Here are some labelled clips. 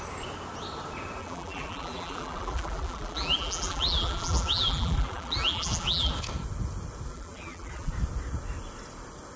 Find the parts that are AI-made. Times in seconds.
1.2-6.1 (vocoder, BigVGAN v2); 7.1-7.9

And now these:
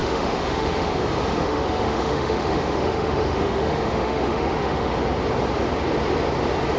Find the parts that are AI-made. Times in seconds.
0.0-0.9 (autoencoder, DAC-VAE); 1.3-4.9

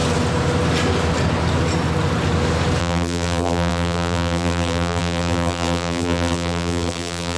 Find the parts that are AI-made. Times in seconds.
2.8-7.4 (vocoder, BigVGAN v2)

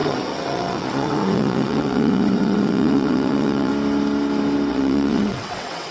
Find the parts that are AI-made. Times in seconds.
0.0-3.7 (vocoder, WaveNeXt); 4.7-5.9

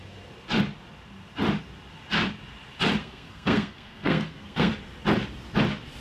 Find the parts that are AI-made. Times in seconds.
3.0-4.7 (codec, SNAC)

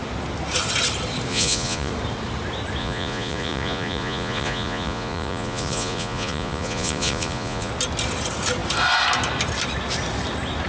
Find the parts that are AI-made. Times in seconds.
1.3-1.9 (vocoder, Vocos); 2.8-7.7

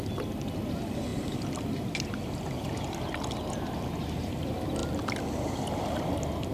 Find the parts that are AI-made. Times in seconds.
1.1-1.9 (vocoder, BigVGAN v2)